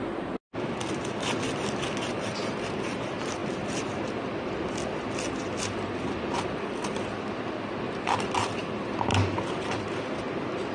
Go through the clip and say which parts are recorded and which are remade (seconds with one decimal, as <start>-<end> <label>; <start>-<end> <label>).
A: 0.0-9.1 recorded; 9.1-9.7 remade; 9.7-10.7 recorded